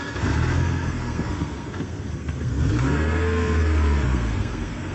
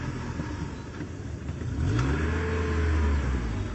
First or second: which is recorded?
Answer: second